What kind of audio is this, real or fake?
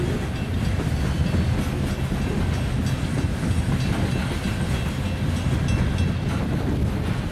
real